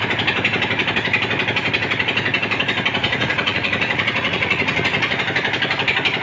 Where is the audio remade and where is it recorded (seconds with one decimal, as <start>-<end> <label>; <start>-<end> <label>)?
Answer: 0.0-3.0 recorded; 3.0-5.2 remade; 5.2-6.2 recorded